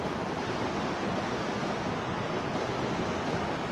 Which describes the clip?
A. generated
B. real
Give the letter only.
B